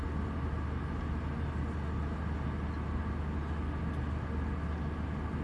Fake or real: real